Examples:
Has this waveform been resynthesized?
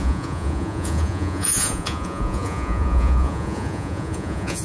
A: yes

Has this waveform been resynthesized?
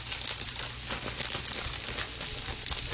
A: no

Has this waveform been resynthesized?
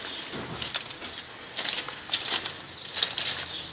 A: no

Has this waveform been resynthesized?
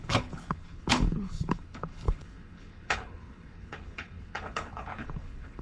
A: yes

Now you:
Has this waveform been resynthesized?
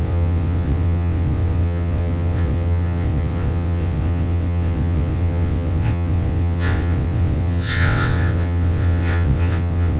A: yes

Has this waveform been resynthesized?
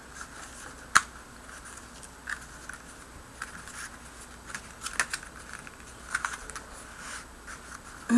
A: no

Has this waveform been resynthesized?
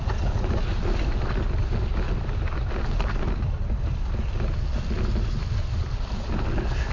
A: no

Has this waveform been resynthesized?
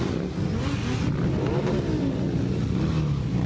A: no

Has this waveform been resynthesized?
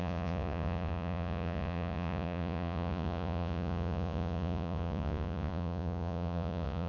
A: yes